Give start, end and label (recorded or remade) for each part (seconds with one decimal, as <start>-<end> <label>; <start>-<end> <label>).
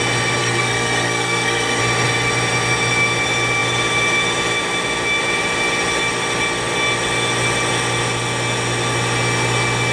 0.0-0.4 recorded; 0.4-1.8 remade; 1.8-9.9 recorded